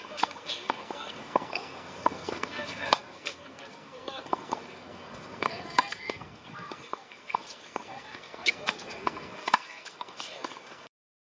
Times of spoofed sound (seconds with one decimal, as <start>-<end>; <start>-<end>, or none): 0.0-11.2